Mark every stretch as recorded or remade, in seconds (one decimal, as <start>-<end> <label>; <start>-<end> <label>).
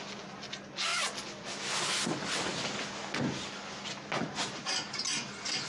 0.0-5.7 recorded